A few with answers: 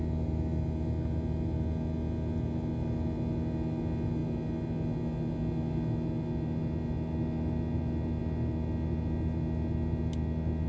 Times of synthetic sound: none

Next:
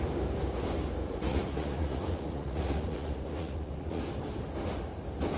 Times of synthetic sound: 1.0-4.0 (vocoder, Vocos)

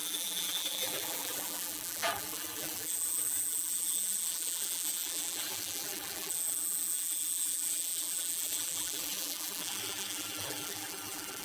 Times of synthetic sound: 0.0-11.4 (vocoder, BigVGAN v2)

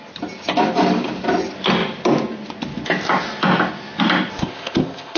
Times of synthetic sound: 4.4-5.2 (codec, ZipCodec)